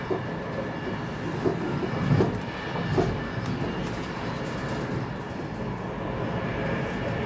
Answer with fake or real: real